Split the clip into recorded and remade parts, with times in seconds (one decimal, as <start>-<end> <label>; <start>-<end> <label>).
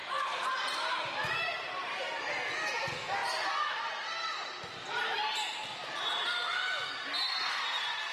0.0-8.1 recorded